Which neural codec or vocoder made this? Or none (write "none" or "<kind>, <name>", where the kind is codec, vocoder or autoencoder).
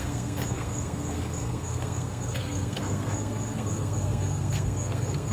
codec, SNAC